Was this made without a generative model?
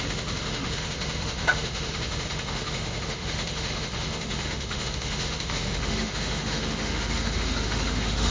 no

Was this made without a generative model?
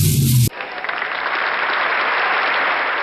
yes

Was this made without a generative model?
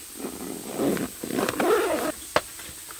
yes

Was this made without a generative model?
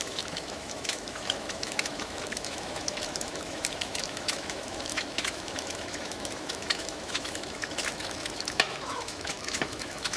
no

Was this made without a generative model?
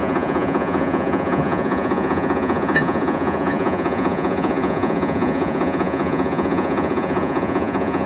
no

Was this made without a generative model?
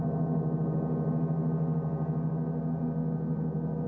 yes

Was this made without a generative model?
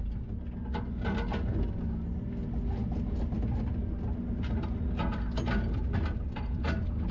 yes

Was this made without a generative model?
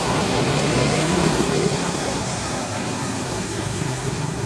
no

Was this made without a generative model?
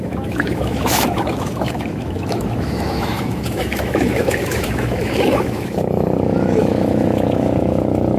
no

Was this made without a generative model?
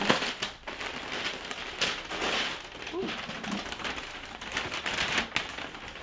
yes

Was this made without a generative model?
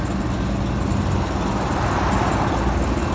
yes